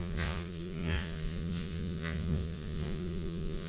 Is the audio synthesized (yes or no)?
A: yes